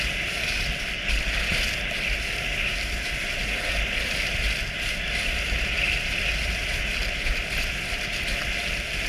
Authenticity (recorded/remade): recorded